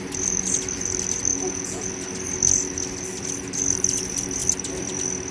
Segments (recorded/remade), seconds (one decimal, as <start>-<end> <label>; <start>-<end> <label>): 0.0-1.3 recorded; 1.3-1.9 remade; 1.9-5.3 recorded

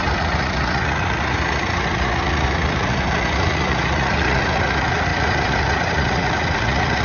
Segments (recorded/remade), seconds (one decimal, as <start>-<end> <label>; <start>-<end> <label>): 0.0-7.0 remade

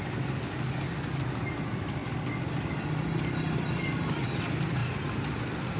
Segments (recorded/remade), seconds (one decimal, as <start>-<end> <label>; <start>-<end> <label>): 0.0-5.8 recorded

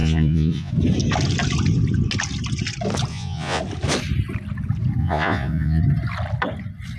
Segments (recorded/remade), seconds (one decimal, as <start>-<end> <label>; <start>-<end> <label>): 0.0-0.7 remade; 0.7-3.1 recorded; 3.1-3.6 remade; 3.6-5.0 recorded; 5.0-5.8 remade; 5.8-7.0 recorded

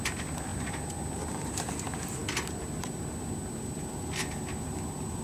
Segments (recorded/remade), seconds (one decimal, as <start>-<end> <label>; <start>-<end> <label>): 0.0-5.2 recorded

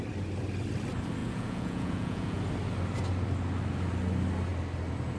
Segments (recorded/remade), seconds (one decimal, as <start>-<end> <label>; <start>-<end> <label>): 0.0-1.2 recorded; 1.2-2.4 remade; 2.4-5.2 recorded

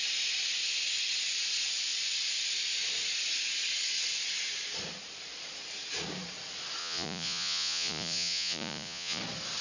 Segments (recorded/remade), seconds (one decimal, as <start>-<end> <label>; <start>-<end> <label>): 0.0-6.8 recorded; 6.8-9.2 remade; 9.2-9.6 recorded

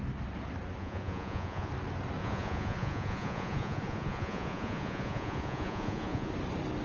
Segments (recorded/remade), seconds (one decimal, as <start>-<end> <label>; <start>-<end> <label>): 0.0-0.8 recorded; 0.8-1.7 remade; 1.7-2.2 recorded; 2.2-6.3 remade; 6.3-6.8 recorded